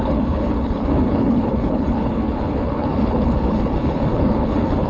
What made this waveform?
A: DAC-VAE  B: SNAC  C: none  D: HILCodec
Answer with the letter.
D